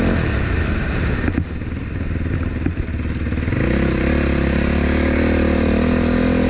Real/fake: real